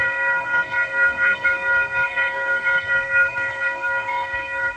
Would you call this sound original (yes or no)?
no